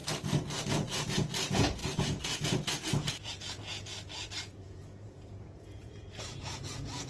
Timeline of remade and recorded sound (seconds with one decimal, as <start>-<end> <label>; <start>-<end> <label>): 0.0-0.7 recorded; 0.7-3.9 remade; 3.9-4.5 recorded; 4.5-7.1 remade